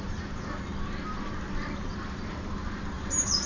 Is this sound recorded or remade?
remade